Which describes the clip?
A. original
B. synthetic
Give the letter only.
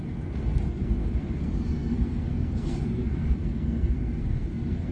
B